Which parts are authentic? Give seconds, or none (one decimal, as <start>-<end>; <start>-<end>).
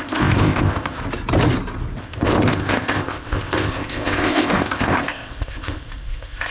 1.0-2.0